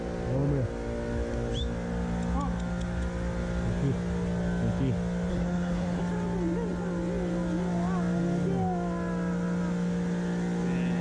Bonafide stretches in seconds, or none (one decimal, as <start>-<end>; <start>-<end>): 0.0-5.3; 6.0-11.0